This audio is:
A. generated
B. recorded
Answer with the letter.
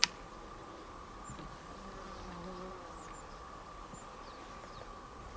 B